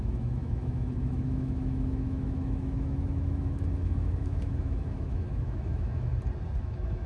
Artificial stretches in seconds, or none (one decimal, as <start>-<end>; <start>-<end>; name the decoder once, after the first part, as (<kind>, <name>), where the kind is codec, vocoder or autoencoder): 0.0-6.1 (autoencoder, DAC-VAE); 6.6-7.1